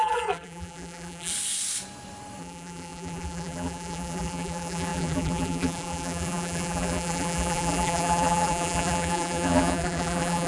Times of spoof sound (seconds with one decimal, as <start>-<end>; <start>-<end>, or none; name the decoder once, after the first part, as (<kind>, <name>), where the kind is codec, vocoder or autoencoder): 0.0-1.3 (vocoder, BigVGAN v2); 2.4-10.5